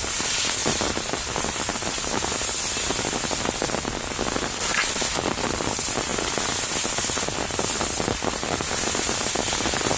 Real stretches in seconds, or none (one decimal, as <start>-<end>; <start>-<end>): 0.0-10.0